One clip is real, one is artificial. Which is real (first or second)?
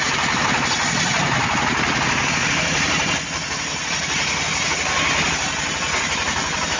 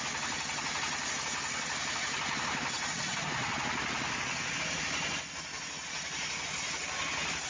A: second